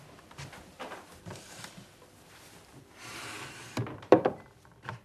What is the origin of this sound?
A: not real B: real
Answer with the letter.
A